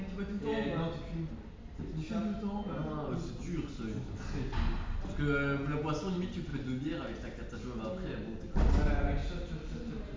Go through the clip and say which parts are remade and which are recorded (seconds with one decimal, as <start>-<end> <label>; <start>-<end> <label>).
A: 0.0-10.2 recorded